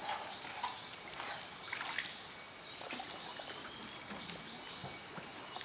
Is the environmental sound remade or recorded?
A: recorded